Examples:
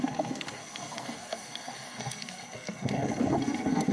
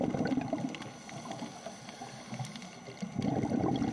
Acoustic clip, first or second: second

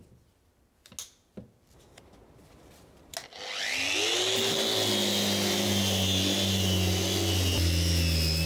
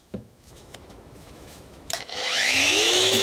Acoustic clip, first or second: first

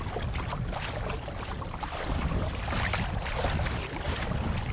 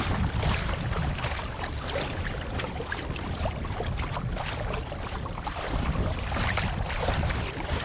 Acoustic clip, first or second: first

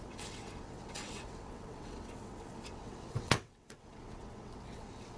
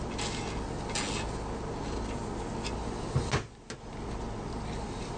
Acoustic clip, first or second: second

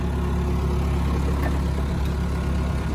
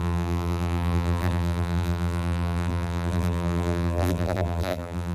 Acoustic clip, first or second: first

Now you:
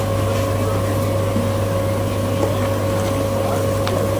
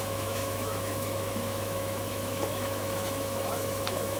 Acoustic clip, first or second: first